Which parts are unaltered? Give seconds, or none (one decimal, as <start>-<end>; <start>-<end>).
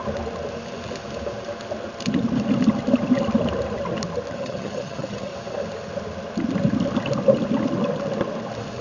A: 0.0-4.3; 5.3-8.8